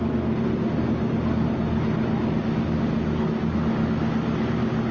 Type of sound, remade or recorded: recorded